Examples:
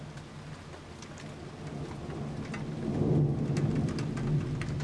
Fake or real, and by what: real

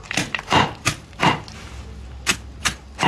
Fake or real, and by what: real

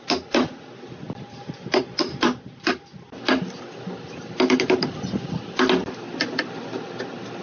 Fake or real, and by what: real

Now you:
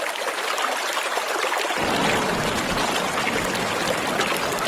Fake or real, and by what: real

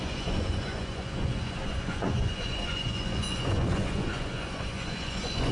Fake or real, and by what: fake, vocoder, Vocos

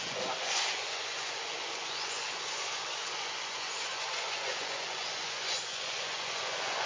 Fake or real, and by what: fake, vocoder, Vocos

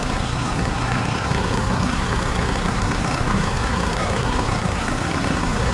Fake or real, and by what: fake, codec, SNAC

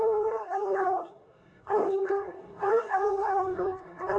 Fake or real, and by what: fake, codec, SNAC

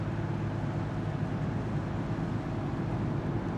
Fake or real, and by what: real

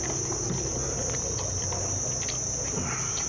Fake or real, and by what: real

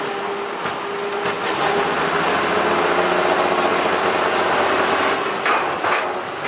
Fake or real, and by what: real